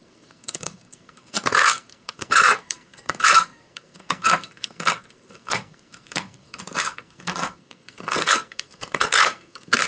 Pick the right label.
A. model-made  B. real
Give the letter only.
A